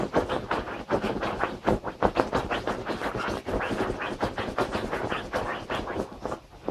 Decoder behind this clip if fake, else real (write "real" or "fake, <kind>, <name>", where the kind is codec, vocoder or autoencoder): real